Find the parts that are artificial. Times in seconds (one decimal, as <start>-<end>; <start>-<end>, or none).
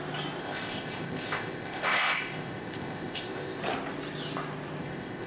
0.4-3.6; 4.8-5.3